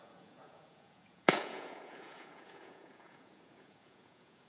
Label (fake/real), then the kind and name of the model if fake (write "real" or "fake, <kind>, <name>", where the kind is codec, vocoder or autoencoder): fake, vocoder, Vocos